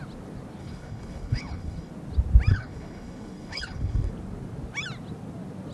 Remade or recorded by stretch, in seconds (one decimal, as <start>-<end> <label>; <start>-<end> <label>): 0.0-0.6 recorded; 0.6-1.9 remade; 1.9-2.5 recorded; 2.5-4.1 remade; 4.1-5.7 recorded